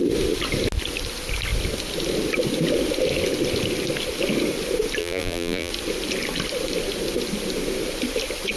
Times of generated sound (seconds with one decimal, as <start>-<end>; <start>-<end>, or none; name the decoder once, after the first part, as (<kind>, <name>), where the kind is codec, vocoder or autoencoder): 5.0-5.7 (vocoder, BigVGAN v2)